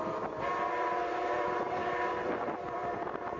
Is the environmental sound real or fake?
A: fake